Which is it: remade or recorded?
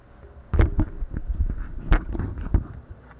recorded